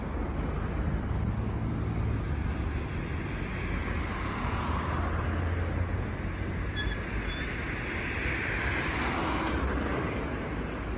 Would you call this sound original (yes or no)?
yes